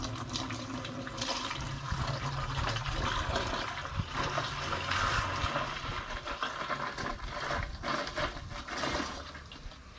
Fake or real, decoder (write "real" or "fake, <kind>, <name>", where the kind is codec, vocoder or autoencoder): real